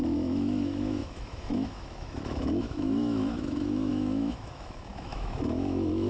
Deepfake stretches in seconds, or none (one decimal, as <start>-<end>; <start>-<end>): 0.0-6.1